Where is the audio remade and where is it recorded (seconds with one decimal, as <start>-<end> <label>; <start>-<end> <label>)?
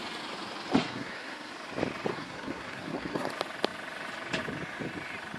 0.0-0.8 recorded; 0.8-1.5 remade; 1.5-2.1 recorded; 2.1-3.3 remade; 3.3-5.4 recorded